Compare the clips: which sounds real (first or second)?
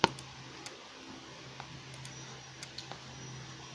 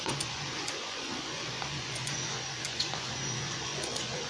first